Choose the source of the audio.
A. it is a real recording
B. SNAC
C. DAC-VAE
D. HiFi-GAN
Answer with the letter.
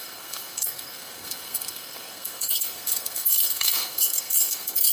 B